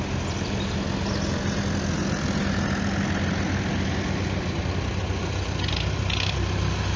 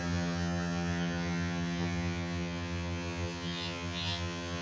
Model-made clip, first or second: second